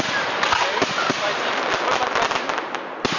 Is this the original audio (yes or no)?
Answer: yes